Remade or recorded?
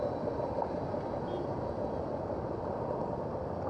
recorded